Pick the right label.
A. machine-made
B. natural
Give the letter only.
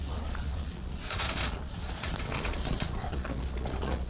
A